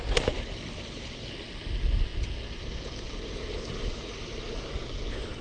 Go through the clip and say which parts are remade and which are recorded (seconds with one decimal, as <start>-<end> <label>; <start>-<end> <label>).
0.0-5.4 recorded